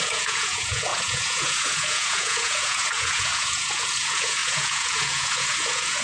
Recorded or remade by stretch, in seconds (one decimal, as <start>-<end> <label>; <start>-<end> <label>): 0.0-6.0 remade